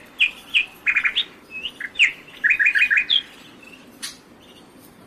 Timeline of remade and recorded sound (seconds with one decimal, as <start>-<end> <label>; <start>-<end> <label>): 0.0-5.1 recorded